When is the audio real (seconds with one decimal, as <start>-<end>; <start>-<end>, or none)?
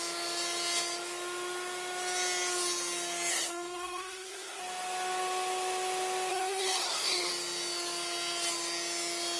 0.0-3.3; 4.6-6.3; 7.3-9.4